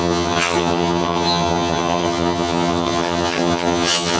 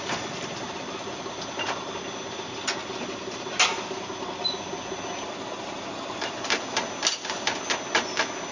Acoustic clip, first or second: second